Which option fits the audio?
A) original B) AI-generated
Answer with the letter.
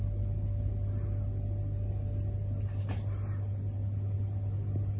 A